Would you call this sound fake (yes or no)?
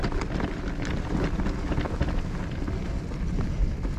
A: no